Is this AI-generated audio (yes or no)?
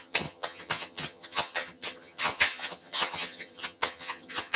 yes